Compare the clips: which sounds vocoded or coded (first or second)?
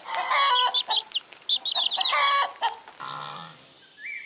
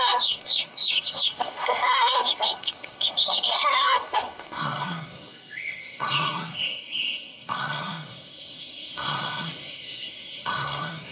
second